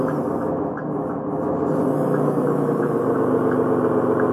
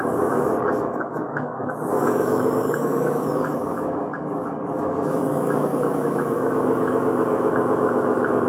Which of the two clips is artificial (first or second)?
second